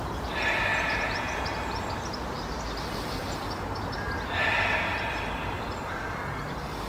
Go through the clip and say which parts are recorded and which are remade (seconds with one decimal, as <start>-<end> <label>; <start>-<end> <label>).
0.0-0.7 recorded; 0.7-1.4 remade; 1.4-6.9 recorded